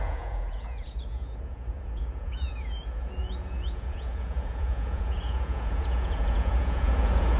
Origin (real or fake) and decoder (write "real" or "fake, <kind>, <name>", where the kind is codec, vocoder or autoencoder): fake, vocoder, Vocos